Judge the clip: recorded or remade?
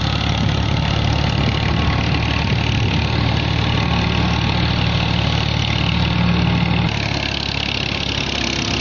recorded